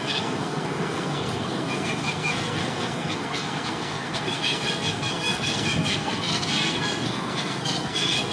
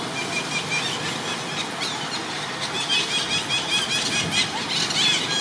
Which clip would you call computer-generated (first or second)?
first